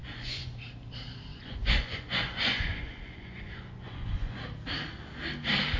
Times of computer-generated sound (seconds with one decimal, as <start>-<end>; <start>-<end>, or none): 0.0-0.5; 1.3-4.4